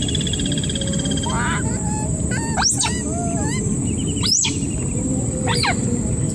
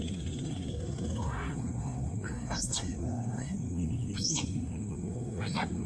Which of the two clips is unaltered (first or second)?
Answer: first